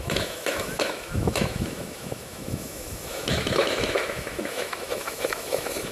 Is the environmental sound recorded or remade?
remade